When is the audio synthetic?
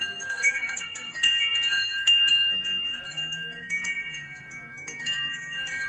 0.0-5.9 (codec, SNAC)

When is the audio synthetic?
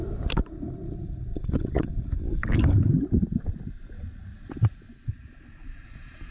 1.3-1.9 (vocoder, Vocos)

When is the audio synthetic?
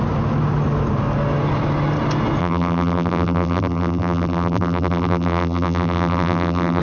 2.4-6.8 (vocoder, BigVGAN v2)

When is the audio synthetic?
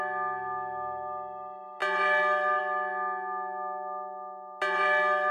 none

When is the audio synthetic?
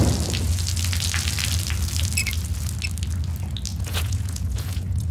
3.7-5.1 (vocoder, Vocos)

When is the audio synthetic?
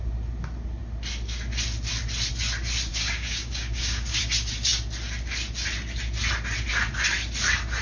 2.9-4.2 (codec, DAC)